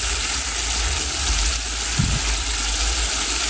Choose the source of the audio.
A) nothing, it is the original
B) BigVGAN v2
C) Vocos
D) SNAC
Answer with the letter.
A